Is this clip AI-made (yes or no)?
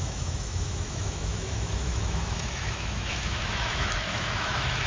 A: yes